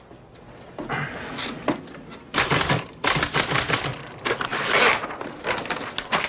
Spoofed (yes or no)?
no